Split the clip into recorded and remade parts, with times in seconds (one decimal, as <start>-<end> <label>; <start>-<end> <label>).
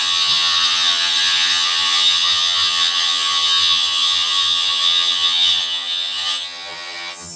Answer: 0.0-7.4 remade